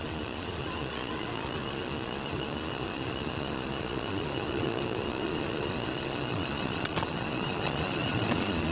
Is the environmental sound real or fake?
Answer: fake